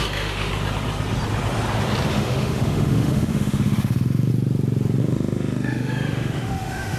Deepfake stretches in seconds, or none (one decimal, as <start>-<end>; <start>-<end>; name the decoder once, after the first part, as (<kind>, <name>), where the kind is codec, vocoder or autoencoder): 0.0-0.5 (autoencoder, DAC-VAE); 2.1-4.3; 5.0-7.0